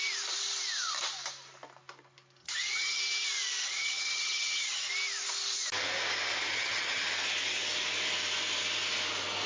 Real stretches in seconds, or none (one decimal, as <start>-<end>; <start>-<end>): 0.0-2.4; 3.0-3.6; 4.9-6.5; 7.0-9.5